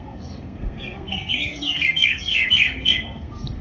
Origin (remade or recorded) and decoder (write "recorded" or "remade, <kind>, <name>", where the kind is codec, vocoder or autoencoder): remade, codec, SNAC